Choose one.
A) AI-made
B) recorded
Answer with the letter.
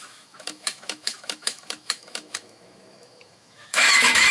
A